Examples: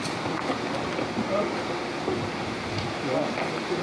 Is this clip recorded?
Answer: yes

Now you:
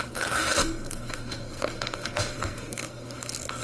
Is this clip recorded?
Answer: no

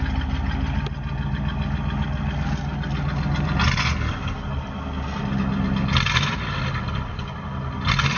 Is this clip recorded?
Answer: yes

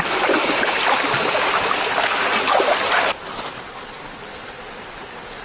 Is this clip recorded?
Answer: yes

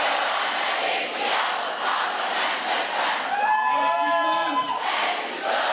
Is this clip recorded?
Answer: yes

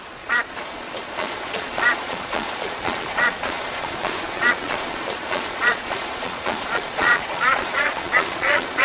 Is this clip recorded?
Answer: no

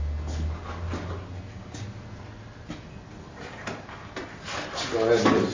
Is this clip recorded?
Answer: yes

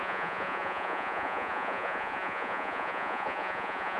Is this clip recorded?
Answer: no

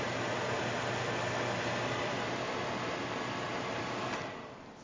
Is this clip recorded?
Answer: yes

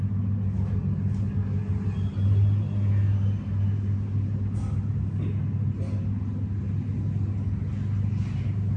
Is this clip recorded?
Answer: yes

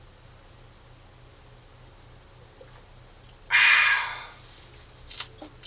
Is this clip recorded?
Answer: yes